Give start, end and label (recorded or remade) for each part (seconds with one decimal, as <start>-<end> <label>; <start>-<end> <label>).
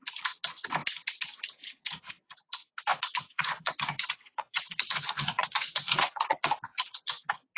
0.0-2.9 recorded; 2.9-6.5 remade; 6.5-7.6 recorded